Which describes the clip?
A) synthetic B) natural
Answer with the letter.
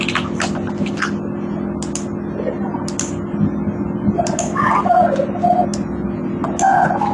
B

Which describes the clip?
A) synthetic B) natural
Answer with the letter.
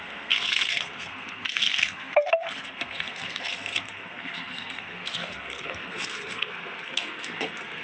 A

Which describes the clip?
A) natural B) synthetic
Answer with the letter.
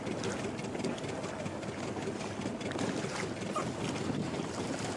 A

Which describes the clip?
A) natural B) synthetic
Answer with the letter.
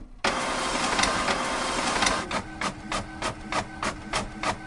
A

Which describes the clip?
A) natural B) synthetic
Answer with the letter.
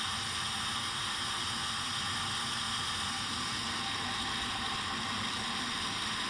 A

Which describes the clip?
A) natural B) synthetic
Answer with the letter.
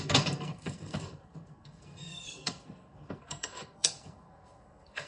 B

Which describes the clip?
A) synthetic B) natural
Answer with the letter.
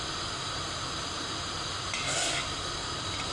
B